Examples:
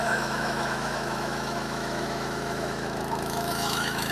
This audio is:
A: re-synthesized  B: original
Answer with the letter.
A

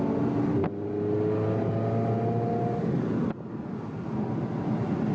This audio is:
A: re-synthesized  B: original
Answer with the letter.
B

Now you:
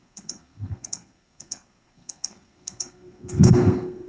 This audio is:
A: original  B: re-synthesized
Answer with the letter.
B